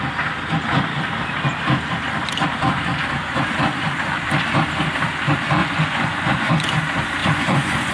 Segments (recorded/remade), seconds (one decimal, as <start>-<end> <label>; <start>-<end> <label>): 0.0-5.6 recorded; 5.6-6.5 remade; 6.5-7.2 recorded; 7.2-7.9 remade